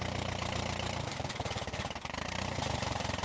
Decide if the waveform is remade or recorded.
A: remade